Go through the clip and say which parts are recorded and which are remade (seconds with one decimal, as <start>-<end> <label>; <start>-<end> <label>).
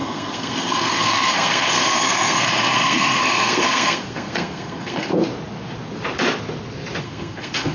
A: 0.0-5.1 remade; 5.1-7.0 recorded; 7.0-7.7 remade